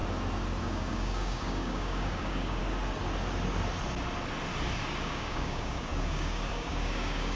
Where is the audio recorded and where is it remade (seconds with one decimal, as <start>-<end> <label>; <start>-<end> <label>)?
0.0-0.6 recorded; 0.6-2.6 remade; 2.6-5.0 recorded; 5.0-7.4 remade